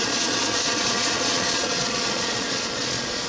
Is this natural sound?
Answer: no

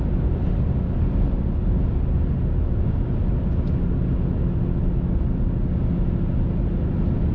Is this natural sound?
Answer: yes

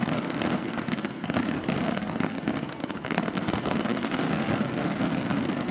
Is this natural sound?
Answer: no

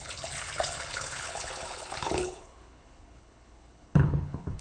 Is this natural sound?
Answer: no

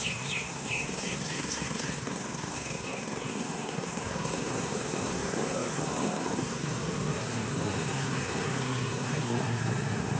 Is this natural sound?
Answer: no